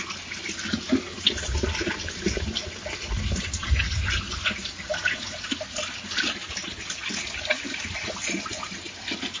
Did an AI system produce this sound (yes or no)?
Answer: no